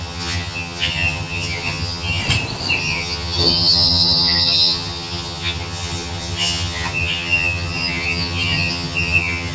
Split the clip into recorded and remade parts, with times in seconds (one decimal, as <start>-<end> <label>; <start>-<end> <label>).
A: 0.0-2.2 remade; 2.2-2.8 recorded; 2.8-9.5 remade